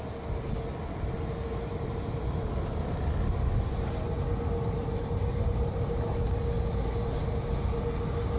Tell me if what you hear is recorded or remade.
recorded